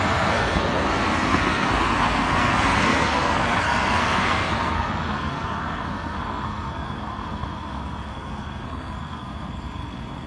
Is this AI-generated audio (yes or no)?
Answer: yes